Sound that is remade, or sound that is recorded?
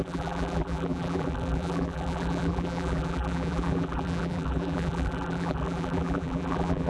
remade